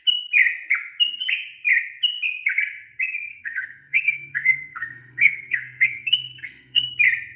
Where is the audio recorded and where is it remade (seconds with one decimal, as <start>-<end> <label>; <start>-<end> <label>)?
0.0-3.3 recorded; 3.3-6.9 remade; 6.9-7.4 recorded